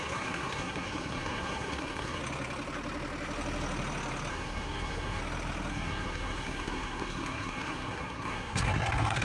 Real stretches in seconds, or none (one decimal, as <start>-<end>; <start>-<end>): 2.2-4.3; 5.2-5.7